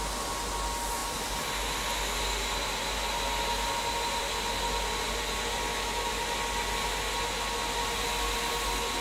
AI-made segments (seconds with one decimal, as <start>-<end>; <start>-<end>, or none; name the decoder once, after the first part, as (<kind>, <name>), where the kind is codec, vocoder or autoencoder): 5.7-6.2 (autoencoder, DAC-VAE)